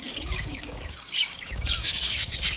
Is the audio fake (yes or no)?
yes